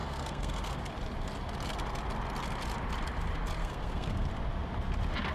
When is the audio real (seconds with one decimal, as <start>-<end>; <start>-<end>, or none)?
0.8-3.6; 4.3-5.3